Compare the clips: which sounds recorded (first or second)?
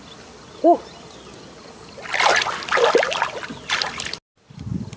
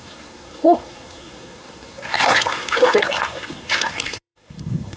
first